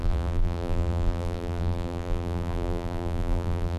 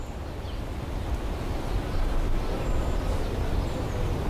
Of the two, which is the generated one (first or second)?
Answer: first